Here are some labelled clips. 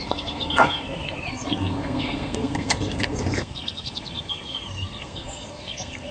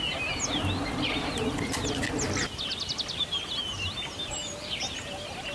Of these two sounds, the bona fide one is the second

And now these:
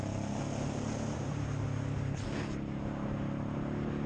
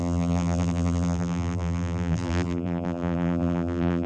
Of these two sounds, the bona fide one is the first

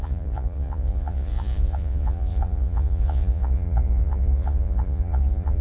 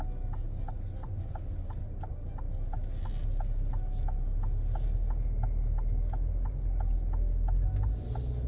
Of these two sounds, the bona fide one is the second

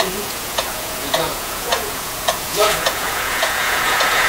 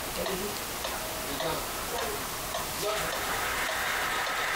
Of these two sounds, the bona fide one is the second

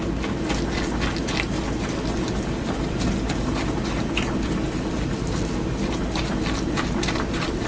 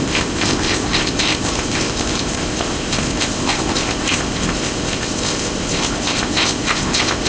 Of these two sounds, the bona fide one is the first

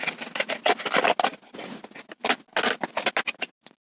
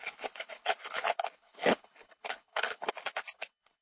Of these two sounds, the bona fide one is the first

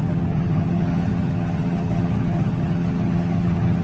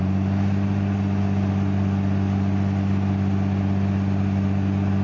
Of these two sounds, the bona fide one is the second